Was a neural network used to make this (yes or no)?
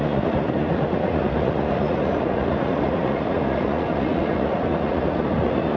yes